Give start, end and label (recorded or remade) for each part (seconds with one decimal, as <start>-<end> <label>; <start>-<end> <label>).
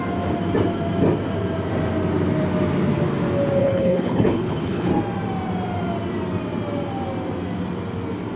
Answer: 0.0-3.6 recorded; 3.6-4.9 remade; 4.9-8.4 recorded